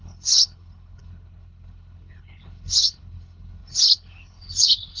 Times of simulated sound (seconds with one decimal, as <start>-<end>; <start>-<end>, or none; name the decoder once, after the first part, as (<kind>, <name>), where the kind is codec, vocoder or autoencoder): 0.0-5.0 (codec, HILCodec)